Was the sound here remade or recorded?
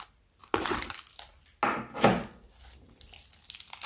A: recorded